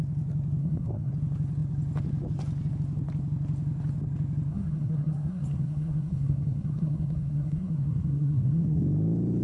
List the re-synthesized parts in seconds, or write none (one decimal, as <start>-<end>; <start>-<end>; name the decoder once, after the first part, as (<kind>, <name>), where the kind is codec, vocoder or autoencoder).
0.6-1.1 (codec, SNAC); 4.5-8.8